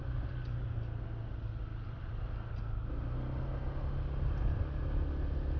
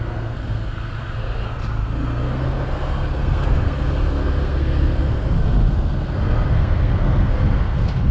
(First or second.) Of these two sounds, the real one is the first